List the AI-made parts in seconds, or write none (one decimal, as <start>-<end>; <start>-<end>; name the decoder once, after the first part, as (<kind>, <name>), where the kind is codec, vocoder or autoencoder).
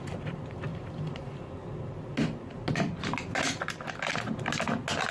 none